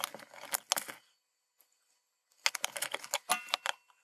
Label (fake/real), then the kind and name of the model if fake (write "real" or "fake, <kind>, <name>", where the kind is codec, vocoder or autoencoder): real